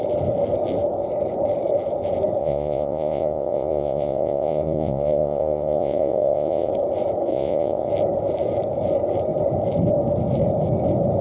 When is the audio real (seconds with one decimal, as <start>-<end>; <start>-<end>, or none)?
0.0-2.4; 6.7-7.3; 7.9-11.2